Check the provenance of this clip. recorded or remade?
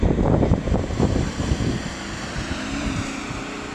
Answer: remade